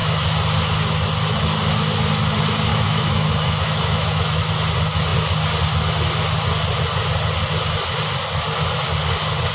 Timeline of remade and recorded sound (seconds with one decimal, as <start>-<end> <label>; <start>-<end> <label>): 0.0-2.7 recorded; 2.7-4.5 remade; 4.5-9.5 recorded